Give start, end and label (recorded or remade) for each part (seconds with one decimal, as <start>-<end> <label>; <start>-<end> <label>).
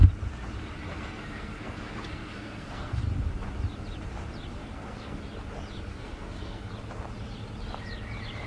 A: 0.0-0.9 recorded; 0.9-3.0 remade; 3.0-4.6 recorded; 4.6-5.2 remade; 5.2-5.9 recorded; 5.9-6.7 remade; 6.7-8.5 recorded